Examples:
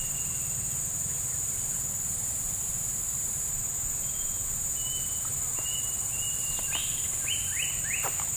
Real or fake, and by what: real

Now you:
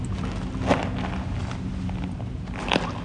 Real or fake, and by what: real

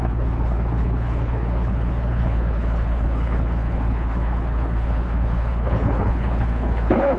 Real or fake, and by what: fake, codec, HILCodec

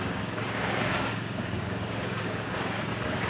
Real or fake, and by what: fake, codec, DAC